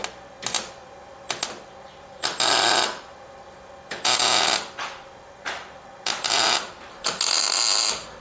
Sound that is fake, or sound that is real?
real